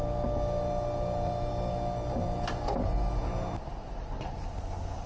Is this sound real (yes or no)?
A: yes